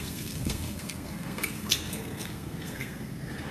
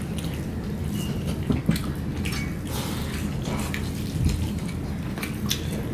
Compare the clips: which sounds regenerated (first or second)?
first